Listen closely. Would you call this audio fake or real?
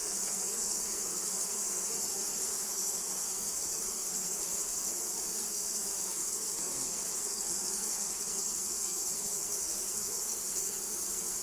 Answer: fake